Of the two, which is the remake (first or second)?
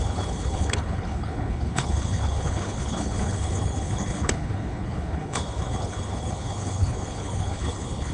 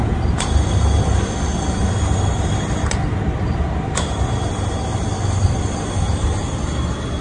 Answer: first